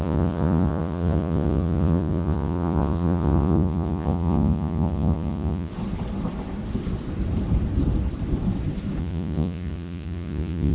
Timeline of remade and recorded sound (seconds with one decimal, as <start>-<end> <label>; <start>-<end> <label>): 0.0-5.7 remade; 5.7-9.0 recorded; 9.0-10.7 remade